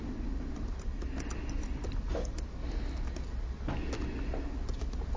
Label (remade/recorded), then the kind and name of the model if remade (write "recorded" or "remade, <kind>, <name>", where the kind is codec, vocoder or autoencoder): recorded